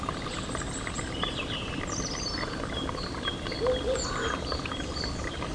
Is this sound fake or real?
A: real